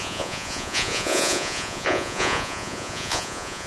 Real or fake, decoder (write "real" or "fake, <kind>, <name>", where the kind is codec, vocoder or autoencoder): fake, vocoder, Vocos